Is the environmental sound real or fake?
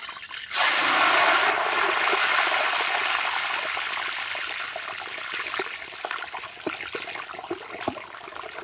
real